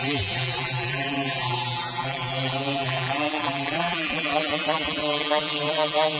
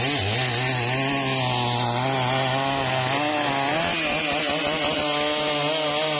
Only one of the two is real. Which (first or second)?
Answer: second